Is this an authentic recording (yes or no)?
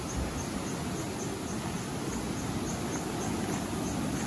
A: yes